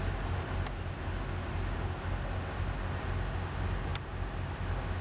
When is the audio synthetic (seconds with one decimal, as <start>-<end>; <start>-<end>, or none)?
none

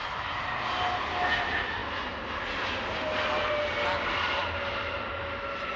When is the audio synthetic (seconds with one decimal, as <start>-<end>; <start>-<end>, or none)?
none